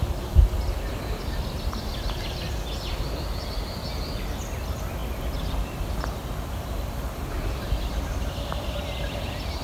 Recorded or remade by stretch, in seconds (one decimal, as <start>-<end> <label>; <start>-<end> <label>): 0.0-9.6 recorded